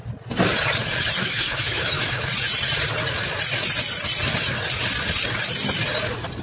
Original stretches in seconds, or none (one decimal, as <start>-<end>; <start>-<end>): 0.0-1.2; 2.2-6.4